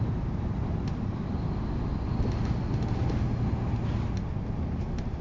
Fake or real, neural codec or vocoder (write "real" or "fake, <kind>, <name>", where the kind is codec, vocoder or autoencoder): real